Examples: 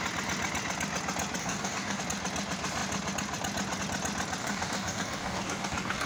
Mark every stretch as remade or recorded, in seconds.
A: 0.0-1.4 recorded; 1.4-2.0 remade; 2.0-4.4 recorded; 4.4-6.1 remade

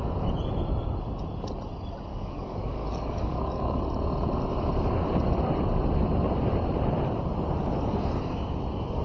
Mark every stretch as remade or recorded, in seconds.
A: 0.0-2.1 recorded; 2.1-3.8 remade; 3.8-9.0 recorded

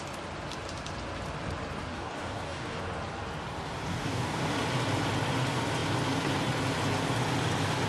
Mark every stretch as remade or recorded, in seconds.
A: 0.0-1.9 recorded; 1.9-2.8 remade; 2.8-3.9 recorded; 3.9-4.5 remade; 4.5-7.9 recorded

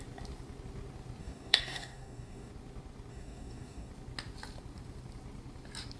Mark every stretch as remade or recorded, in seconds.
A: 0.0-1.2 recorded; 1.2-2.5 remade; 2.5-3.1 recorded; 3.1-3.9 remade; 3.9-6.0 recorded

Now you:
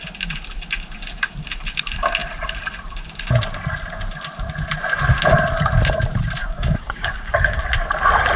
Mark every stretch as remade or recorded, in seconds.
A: 0.0-6.4 recorded; 6.4-7.6 remade; 7.6-8.4 recorded